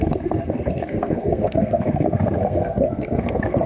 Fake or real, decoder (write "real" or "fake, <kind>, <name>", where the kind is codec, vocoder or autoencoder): fake, codec, SNAC